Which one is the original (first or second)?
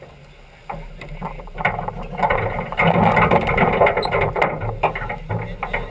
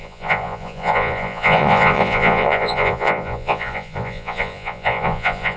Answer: first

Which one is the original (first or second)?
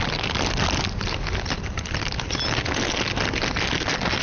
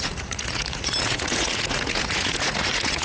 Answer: first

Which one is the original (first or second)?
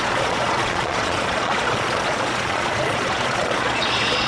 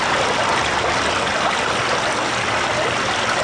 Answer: second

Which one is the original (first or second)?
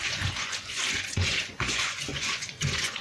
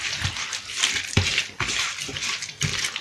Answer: second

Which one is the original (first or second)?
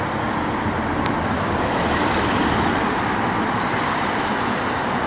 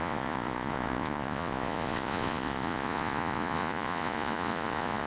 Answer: first